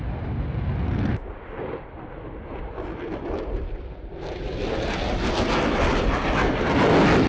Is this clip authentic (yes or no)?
yes